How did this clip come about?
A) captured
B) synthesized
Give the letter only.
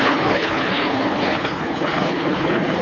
B